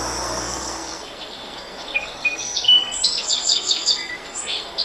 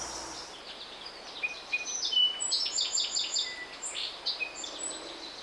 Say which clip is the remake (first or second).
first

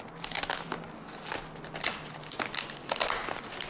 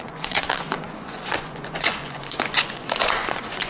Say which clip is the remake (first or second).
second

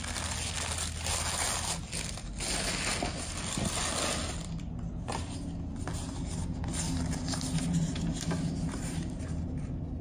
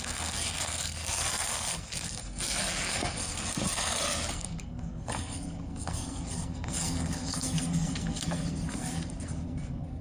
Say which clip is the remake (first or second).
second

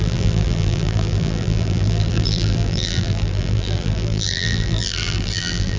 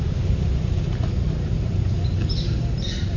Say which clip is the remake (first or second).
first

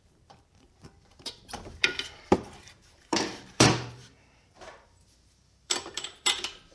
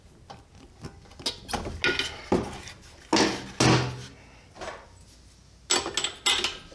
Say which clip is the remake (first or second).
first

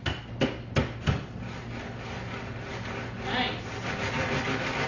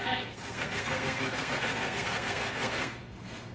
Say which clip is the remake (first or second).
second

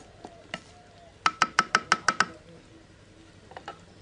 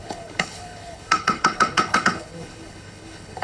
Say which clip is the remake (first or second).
second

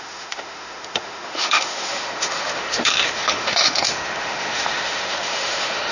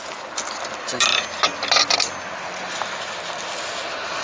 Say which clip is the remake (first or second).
first